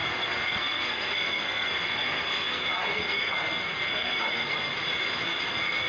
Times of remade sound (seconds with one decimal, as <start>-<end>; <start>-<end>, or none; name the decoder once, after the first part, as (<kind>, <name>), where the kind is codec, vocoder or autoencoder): 0.0-4.7 (codec, SNAC); 5.5-5.9